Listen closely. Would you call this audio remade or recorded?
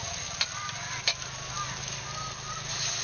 recorded